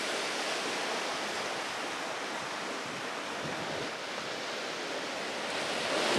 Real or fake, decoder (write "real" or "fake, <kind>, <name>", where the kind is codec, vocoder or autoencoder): real